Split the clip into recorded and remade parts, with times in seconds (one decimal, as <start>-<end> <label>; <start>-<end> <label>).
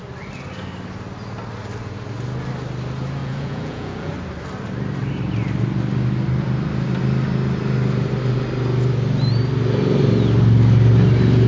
0.0-3.2 recorded; 3.2-4.1 remade; 4.1-11.5 recorded